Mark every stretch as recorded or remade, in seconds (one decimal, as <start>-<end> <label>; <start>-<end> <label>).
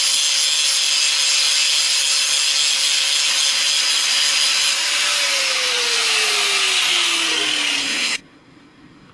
0.0-7.8 recorded; 7.8-9.1 remade